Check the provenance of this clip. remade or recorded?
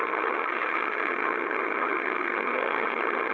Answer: remade